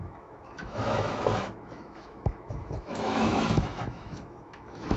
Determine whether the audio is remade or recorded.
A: remade